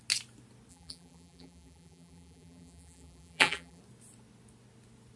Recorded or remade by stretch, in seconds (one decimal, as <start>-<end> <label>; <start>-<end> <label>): 0.0-0.7 recorded; 0.7-3.8 remade; 3.8-5.2 recorded